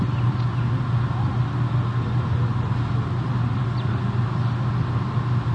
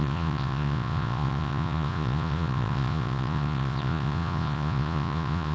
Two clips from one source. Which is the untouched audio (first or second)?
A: first